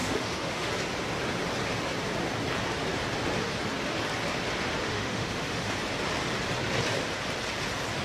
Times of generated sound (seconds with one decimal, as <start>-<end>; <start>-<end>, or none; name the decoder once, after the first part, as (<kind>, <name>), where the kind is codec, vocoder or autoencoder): 0.0-0.7 (autoencoder, DAC-VAE); 4.8-5.7